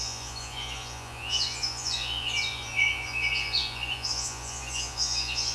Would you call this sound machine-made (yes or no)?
yes